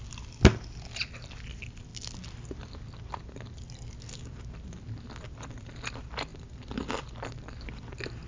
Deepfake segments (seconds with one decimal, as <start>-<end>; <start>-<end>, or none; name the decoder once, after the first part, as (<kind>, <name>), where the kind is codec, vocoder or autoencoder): none

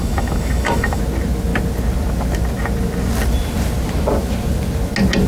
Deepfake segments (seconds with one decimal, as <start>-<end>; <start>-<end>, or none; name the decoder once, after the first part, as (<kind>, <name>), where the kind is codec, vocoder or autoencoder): 0.0-1.0 (autoencoder, DAC-VAE)

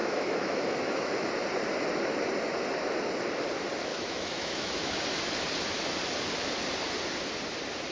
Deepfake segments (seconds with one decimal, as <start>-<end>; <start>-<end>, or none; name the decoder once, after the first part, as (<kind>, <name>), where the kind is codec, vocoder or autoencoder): 0.0-1.3 (autoencoder, DAC-VAE); 3.9-5.0

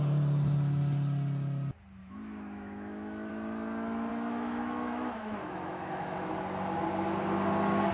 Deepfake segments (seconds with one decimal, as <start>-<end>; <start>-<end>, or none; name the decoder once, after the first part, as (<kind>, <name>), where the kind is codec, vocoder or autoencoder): 2.0-3.3 (autoencoder, DAC-VAE); 4.1-6.3

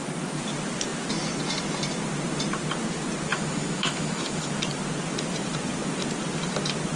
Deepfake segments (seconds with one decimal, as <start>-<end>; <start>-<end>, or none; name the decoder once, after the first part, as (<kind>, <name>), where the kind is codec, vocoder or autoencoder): 3.3-4.5 (autoencoder, DAC-VAE)

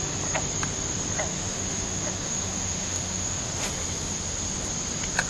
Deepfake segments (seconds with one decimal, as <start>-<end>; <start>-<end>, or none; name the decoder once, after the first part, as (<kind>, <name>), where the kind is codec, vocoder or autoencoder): 1.3-3.7 (autoencoder, DAC-VAE)

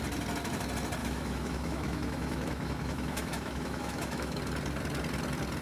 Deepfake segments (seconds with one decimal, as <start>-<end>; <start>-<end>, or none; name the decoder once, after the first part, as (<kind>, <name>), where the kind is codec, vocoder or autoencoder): 1.0-4.4 (autoencoder, DAC-VAE)

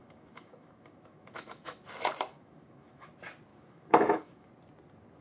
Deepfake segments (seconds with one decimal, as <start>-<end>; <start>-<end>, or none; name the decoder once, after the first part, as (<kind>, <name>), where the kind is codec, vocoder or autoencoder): 0.0-3.1 (autoencoder, DAC-VAE); 3.5-4.5